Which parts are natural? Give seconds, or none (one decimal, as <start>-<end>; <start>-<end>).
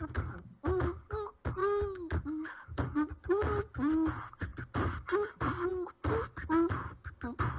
0.0-7.6